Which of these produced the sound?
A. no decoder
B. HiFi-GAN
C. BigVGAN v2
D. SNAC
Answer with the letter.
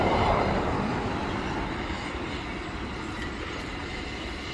C